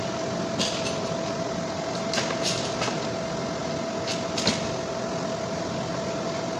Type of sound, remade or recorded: recorded